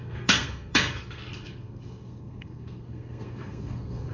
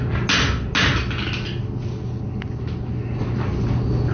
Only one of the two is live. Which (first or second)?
second